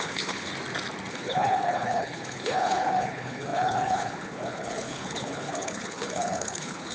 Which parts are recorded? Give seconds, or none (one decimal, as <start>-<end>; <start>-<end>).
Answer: 0.5-1.1